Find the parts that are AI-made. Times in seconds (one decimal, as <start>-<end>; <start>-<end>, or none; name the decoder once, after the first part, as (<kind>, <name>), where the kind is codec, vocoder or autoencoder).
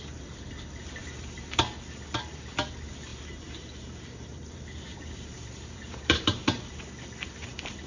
1.0-1.6 (vocoder, BigVGAN v2); 3.1-6.6